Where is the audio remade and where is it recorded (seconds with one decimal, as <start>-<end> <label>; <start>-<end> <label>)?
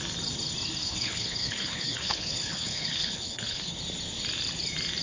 0.0-0.8 recorded; 0.8-3.8 remade; 3.8-5.0 recorded